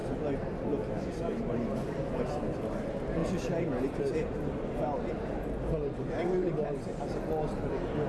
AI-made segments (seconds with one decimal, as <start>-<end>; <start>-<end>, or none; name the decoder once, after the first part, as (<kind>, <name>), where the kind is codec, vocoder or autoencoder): none